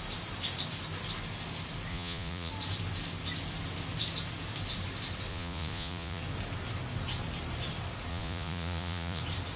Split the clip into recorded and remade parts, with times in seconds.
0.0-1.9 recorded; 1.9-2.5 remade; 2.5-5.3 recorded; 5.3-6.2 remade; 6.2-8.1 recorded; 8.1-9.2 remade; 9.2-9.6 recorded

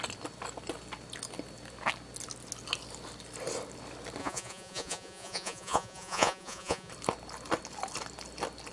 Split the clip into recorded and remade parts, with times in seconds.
0.0-4.2 recorded; 4.2-6.9 remade; 6.9-8.7 recorded

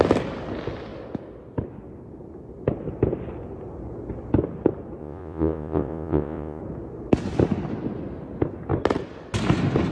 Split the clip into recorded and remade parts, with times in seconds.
0.0-5.0 recorded; 5.0-6.6 remade; 6.6-9.9 recorded

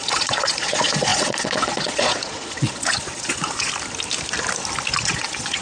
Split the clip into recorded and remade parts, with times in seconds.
0.0-3.7 remade; 3.7-5.0 recorded; 5.0-5.6 remade